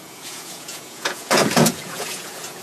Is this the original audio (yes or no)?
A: no